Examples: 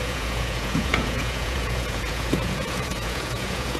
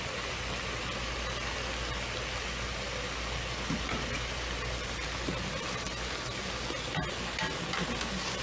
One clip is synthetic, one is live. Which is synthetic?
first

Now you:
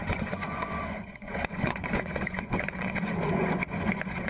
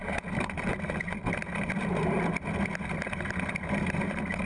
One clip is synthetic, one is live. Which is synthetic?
first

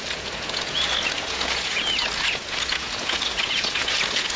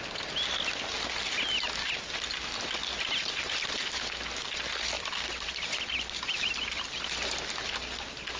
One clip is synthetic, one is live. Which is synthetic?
first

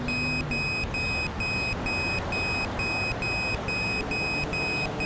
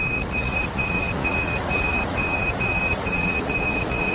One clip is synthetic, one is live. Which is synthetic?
second